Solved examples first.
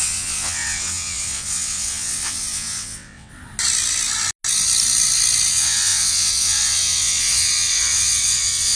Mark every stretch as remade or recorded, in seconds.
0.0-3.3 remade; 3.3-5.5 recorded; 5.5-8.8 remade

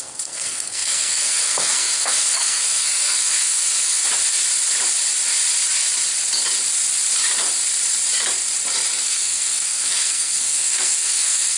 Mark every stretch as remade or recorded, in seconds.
0.0-4.0 remade; 4.0-9.0 recorded; 9.0-11.6 remade

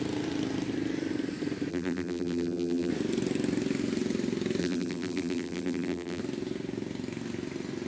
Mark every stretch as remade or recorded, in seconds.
0.0-1.7 recorded; 1.7-2.9 remade; 2.9-4.6 recorded; 4.6-6.2 remade; 6.2-7.9 recorded

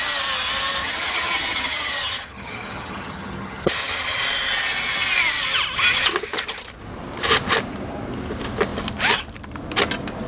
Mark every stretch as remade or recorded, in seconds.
0.0-0.8 recorded; 0.8-4.2 remade; 4.2-10.3 recorded

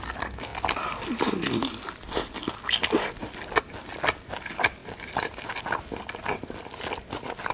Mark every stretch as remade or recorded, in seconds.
0.0-7.5 recorded

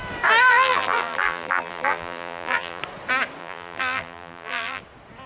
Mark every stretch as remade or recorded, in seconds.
0.0-0.5 recorded; 0.5-2.8 remade; 2.8-3.4 recorded; 3.4-4.8 remade; 4.8-5.3 recorded

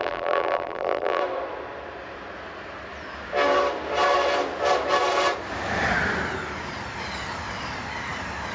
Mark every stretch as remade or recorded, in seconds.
0.0-1.2 remade; 1.2-8.5 recorded